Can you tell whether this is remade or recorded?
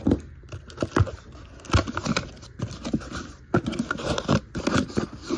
recorded